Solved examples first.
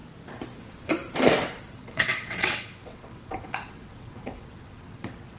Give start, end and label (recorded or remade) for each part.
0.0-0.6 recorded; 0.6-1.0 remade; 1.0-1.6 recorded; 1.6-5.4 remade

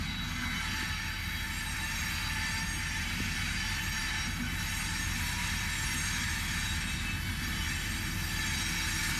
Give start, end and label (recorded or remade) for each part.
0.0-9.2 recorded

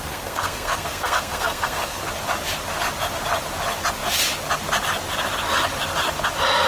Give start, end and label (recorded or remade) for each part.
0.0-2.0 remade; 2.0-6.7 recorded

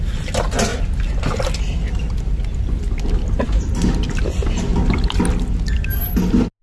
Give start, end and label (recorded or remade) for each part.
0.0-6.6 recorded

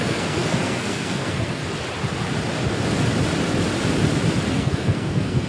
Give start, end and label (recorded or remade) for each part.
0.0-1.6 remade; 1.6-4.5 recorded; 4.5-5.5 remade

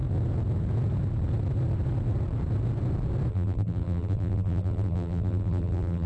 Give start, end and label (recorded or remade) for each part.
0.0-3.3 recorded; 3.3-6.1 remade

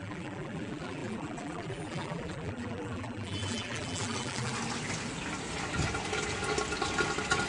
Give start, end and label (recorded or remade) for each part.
0.0-4.5 remade; 4.5-7.5 recorded